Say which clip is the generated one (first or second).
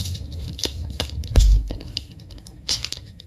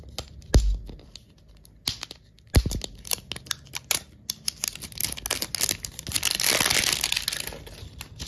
first